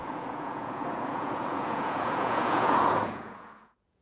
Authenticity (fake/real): fake